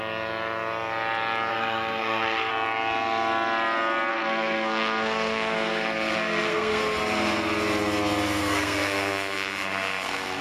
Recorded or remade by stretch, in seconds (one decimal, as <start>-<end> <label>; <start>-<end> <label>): 0.0-1.5 recorded; 1.5-2.5 remade; 2.5-4.1 recorded; 4.1-6.8 remade; 6.8-8.4 recorded; 8.4-10.4 remade